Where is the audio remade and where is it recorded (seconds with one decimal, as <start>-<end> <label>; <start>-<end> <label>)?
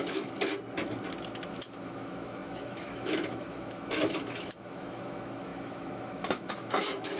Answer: 0.0-0.5 remade; 0.5-1.5 recorded; 1.5-7.2 remade